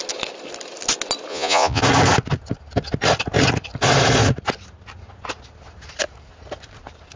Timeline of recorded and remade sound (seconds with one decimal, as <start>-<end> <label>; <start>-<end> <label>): 0.0-1.3 recorded; 1.3-1.8 remade; 1.8-7.2 recorded

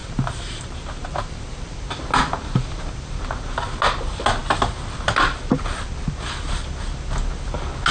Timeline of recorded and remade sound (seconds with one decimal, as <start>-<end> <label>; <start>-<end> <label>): 0.0-1.6 remade; 1.6-7.9 recorded

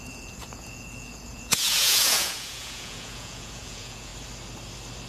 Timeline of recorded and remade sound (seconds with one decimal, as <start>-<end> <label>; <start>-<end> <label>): 0.0-4.1 remade; 4.1-5.1 recorded

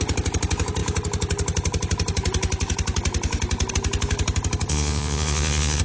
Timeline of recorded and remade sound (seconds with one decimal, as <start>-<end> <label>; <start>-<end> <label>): 0.0-4.7 recorded; 4.7-5.8 remade

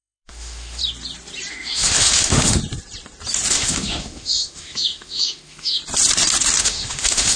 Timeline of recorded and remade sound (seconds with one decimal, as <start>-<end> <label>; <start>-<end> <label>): 0.0-0.8 remade; 0.8-1.5 recorded; 1.5-2.6 remade; 2.6-3.5 recorded; 3.5-5.8 remade; 5.8-6.6 recorded; 6.6-7.4 remade

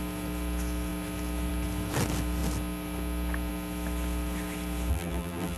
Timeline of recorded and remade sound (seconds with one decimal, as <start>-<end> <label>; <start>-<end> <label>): 0.0-4.9 recorded; 4.9-5.6 remade

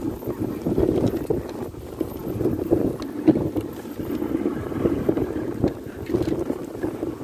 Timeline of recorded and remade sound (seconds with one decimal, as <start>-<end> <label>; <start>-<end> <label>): 0.0-4.5 recorded; 4.5-5.5 remade; 5.5-7.2 recorded

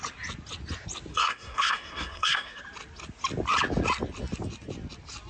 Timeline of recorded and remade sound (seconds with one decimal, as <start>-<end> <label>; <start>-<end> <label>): 0.0-1.1 recorded; 1.1-2.6 remade; 2.6-5.3 recorded